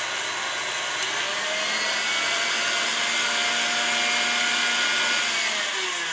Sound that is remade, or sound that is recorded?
recorded